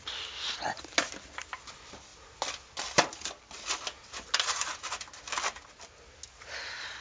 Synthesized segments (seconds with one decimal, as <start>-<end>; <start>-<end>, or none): none